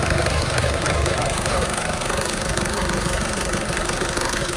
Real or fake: fake